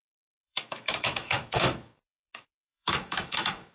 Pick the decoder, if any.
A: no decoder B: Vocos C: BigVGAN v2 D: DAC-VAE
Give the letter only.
D